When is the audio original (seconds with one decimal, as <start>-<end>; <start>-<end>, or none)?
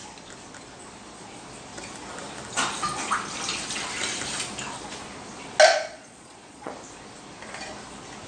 0.0-5.7; 6.7-8.3